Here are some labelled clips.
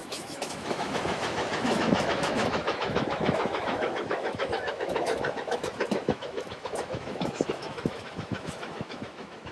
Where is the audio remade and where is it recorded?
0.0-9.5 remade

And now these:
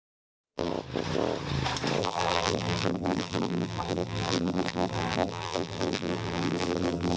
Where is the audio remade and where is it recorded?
0.0-0.7 remade; 0.7-2.0 recorded; 2.0-7.2 remade

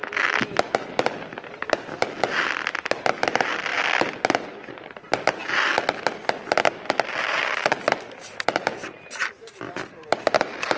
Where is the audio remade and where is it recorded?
0.0-10.8 recorded

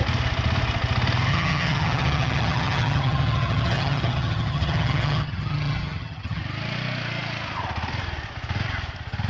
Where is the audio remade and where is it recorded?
0.0-1.3 recorded; 1.3-6.4 remade; 6.4-9.3 recorded

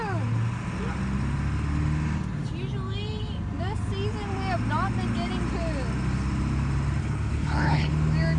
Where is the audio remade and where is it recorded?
0.0-7.0 recorded; 7.0-7.9 remade; 7.9-8.4 recorded

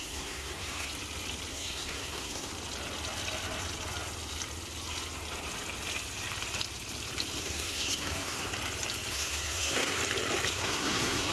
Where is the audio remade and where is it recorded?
0.0-0.9 remade; 0.9-1.5 recorded; 1.5-2.5 remade; 2.5-7.4 recorded; 7.4-8.5 remade; 8.5-9.1 recorded; 9.1-10.0 remade; 10.0-10.5 recorded; 10.5-11.3 remade

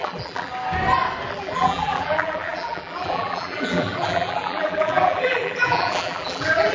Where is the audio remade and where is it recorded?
0.0-0.5 remade; 0.5-1.3 recorded; 1.3-6.7 remade